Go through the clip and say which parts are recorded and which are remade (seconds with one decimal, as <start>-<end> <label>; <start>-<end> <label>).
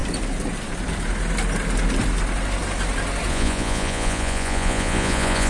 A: 0.0-3.3 recorded; 3.3-5.5 remade